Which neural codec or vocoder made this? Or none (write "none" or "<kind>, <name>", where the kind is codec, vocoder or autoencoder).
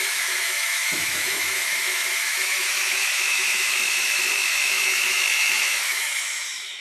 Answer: autoencoder, DAC-VAE